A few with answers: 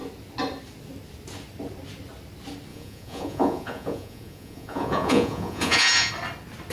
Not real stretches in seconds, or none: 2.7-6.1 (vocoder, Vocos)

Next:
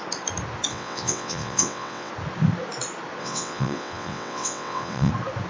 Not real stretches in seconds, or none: 0.7-2.1 (vocoder, WaveNeXt); 3.2-5.1

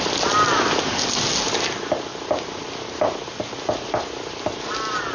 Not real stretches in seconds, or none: none

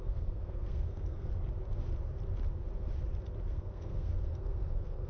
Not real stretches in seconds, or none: 0.0-1.3 (codec, SNAC); 3.5-5.1

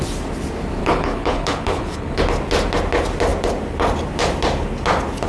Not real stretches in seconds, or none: 0.8-2.2 (codec, HILCodec)

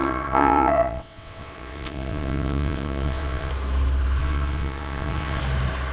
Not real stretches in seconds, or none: 0.0-3.5 (vocoder, WaveNeXt); 4.2-5.4

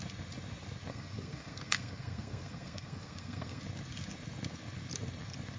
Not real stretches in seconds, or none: 0.9-3.6 (codec, SNAC)